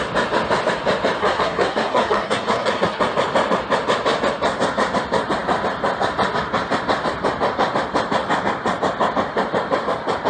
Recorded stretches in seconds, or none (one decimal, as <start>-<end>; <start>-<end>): 0.0-1.2; 3.0-10.3